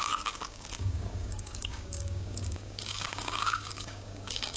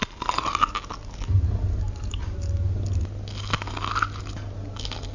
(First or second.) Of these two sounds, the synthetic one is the first